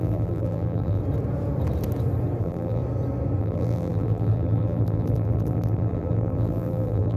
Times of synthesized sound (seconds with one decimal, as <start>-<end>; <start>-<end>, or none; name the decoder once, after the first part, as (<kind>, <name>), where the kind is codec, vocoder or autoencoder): 0.0-1.0 (vocoder, BigVGAN v2); 2.4-2.8; 3.4-7.2